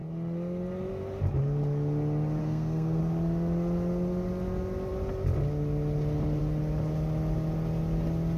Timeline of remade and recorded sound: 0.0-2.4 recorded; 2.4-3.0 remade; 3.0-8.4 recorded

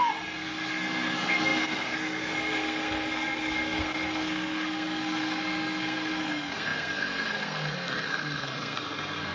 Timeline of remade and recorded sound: 0.0-9.3 remade

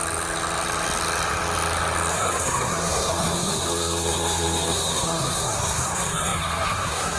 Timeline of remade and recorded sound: 0.0-2.1 recorded; 2.1-7.2 remade